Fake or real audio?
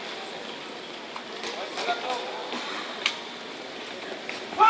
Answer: real